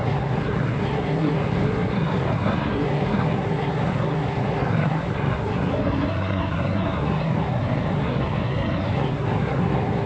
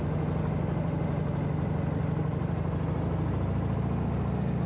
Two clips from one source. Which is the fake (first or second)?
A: first